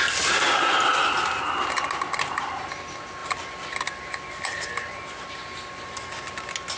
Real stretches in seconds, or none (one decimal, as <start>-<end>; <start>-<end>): 0.0-6.8